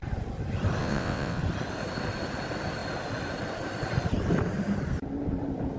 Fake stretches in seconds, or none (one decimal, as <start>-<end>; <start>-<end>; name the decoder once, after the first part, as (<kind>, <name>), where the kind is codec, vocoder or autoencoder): 0.8-1.4 (vocoder, WaveNeXt)